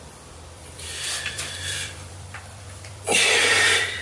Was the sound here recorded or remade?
remade